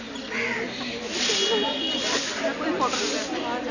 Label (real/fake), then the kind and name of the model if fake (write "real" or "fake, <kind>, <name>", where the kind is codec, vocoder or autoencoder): real